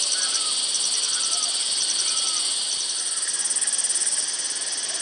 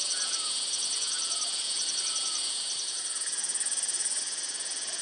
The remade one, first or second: second